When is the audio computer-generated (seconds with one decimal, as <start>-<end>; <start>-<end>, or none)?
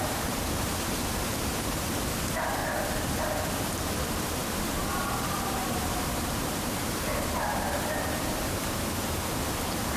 0.0-2.6; 3.6-10.0